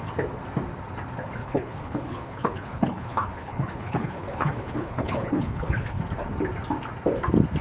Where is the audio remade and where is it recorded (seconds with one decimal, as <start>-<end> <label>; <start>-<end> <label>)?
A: 0.0-1.4 recorded; 1.4-6.0 remade; 6.0-7.6 recorded